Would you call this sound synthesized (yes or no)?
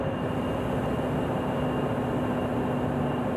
no